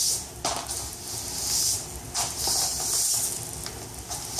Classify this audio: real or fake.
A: real